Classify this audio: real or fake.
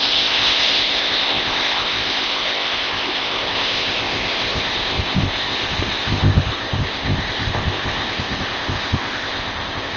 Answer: fake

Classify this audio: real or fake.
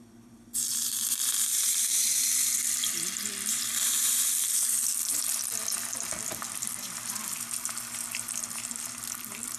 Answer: fake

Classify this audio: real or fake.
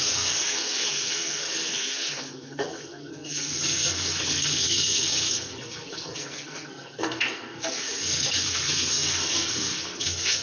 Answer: fake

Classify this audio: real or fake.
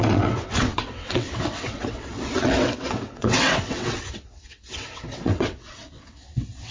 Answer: fake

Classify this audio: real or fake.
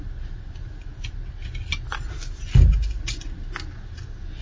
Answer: real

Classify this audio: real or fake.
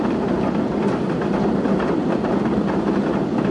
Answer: real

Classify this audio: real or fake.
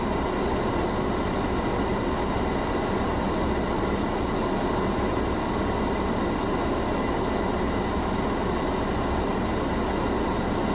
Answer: real